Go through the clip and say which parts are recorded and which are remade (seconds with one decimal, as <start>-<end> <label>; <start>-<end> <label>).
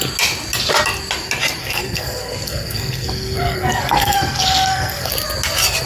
0.0-1.6 recorded; 1.6-5.1 remade; 5.1-5.9 recorded